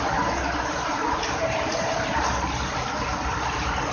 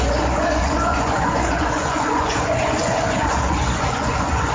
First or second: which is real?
first